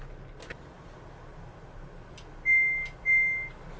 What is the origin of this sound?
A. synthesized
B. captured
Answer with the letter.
B